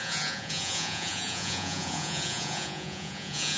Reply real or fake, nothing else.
fake